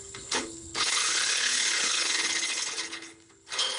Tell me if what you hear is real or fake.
fake